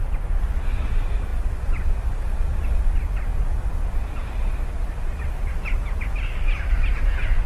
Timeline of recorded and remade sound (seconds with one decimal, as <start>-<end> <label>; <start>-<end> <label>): 0.0-1.3 recorded; 1.3-2.8 remade; 2.8-3.3 recorded; 3.3-6.3 remade; 6.3-7.5 recorded